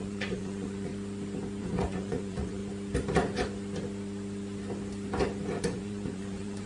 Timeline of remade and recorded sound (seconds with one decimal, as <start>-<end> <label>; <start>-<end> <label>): 0.0-0.9 remade; 0.9-1.6 recorded; 1.6-2.6 remade; 2.6-5.6 recorded; 5.6-6.7 remade